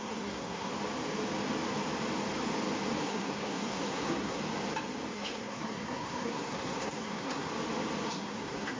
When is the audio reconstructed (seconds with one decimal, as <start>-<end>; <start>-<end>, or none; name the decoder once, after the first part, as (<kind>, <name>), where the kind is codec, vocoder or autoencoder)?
0.0-0.7 (codec, SNAC); 3.0-4.4; 5.1-7.5; 8.1-8.8